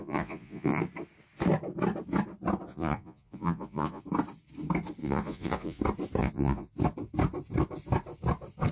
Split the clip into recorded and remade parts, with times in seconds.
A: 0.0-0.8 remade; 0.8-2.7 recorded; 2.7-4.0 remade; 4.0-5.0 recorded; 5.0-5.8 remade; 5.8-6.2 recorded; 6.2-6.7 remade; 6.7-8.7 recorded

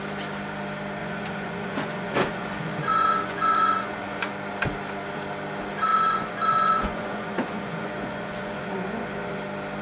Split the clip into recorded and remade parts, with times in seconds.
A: 0.0-1.0 recorded; 1.0-4.3 remade; 4.3-5.9 recorded; 5.9-9.4 remade; 9.4-9.8 recorded

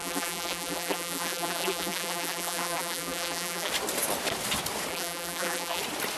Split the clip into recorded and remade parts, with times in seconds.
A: 0.0-3.7 remade; 3.7-4.9 recorded; 4.9-5.8 remade; 5.8-6.2 recorded

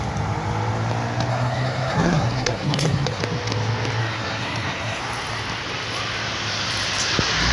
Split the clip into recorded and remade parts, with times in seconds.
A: 0.0-1.3 recorded; 1.3-3.2 remade; 3.2-4.0 recorded; 4.0-5.0 remade; 5.0-7.5 recorded

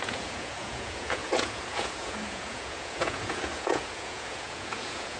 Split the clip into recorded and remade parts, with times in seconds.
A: 0.0-5.2 remade